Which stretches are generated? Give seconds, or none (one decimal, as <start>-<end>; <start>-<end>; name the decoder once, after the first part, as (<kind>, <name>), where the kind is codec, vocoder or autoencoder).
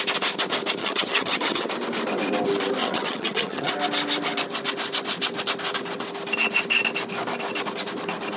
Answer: 0.8-1.7 (vocoder, HiFi-GAN); 2.8-3.7